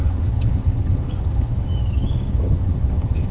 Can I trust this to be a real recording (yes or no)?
no